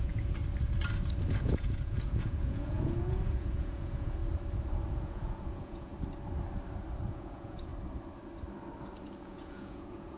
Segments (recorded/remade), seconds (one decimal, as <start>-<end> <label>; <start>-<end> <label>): 0.0-0.4 remade; 0.4-1.4 recorded; 1.4-4.2 remade; 4.2-5.0 recorded; 5.0-5.9 remade; 5.9-7.1 recorded; 7.1-7.7 remade; 7.7-9.2 recorded; 9.2-10.2 remade